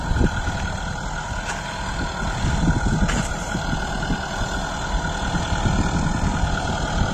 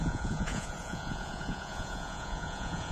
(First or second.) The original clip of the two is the first